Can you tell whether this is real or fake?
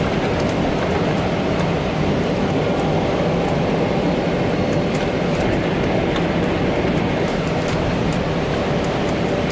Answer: real